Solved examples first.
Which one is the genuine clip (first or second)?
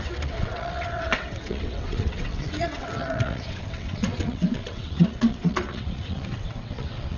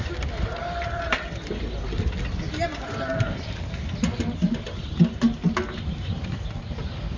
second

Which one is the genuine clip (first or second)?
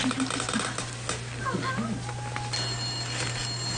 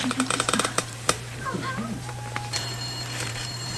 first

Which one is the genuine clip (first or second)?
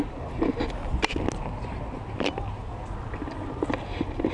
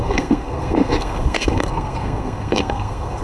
first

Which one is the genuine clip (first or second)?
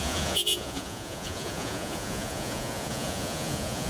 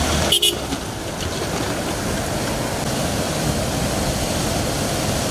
second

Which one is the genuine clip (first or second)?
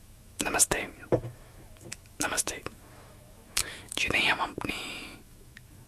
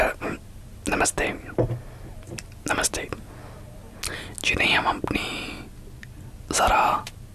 second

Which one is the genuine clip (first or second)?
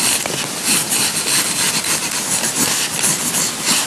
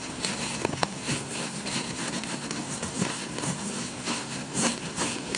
first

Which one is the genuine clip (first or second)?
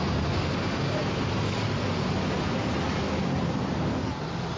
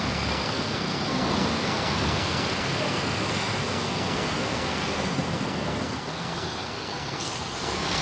first